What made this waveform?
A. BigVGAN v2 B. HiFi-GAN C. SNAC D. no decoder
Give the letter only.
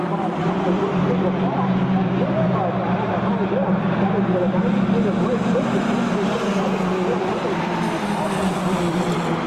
A